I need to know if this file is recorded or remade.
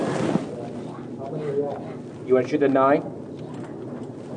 recorded